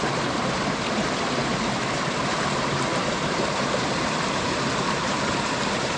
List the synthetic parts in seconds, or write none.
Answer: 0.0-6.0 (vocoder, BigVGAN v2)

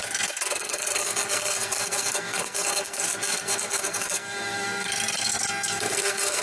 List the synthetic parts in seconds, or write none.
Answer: 0.0-6.4 (codec, SNAC)